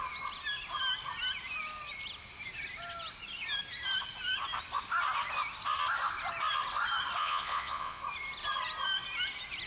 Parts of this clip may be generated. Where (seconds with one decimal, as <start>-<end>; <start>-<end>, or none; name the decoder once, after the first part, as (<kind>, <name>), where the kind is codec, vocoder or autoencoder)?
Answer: 7.2-8.0 (vocoder, Vocos)